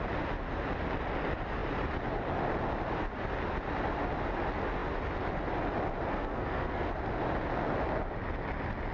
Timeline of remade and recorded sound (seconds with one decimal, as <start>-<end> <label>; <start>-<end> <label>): 0.0-6.1 recorded; 6.1-6.9 remade; 6.9-8.9 recorded